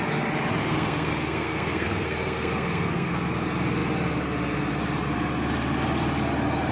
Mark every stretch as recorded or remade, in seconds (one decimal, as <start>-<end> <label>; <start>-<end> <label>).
0.0-0.7 recorded; 0.7-3.1 remade; 3.1-6.7 recorded